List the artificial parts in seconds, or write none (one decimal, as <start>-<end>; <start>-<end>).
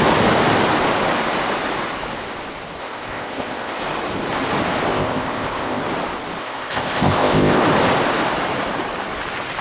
2.8-3.8; 4.9-5.8; 6.4-7.6